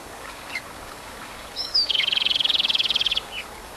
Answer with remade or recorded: remade